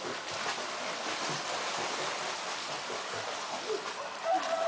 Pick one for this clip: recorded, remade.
recorded